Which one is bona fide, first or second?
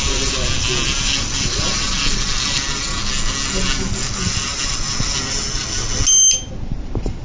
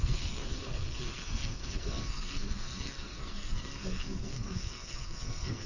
first